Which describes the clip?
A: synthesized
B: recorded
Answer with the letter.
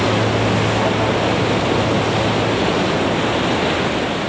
B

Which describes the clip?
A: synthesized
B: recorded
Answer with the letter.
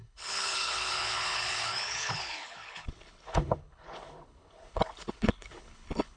A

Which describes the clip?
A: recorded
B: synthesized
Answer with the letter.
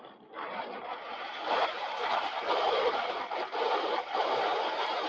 B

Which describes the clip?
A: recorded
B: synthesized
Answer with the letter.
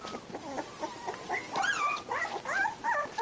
A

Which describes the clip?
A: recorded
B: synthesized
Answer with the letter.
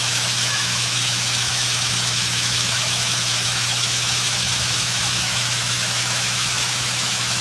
B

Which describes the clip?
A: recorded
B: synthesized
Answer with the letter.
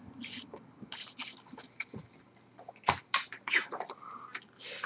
A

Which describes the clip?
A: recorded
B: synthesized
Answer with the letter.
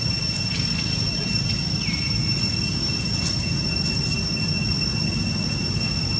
A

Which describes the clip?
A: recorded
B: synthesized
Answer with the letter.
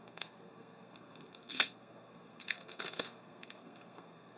B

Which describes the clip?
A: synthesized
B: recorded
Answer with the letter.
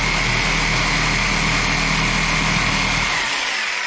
B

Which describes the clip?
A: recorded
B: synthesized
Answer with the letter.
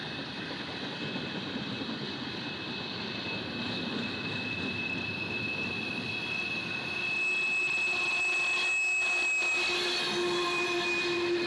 A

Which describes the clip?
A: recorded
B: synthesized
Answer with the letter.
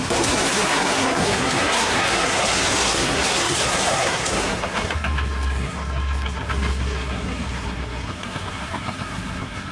B